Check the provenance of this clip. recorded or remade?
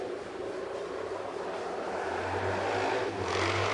recorded